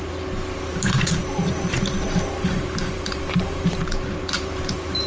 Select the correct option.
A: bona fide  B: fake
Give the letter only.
B